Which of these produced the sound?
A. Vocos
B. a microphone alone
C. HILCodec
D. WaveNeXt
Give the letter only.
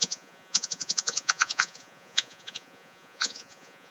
A